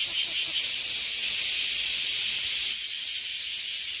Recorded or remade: recorded